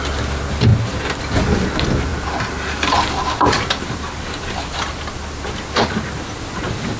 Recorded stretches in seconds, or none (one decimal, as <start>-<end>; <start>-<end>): 0.0-2.1; 6.3-7.0